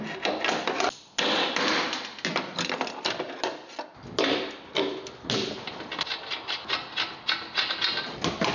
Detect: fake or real real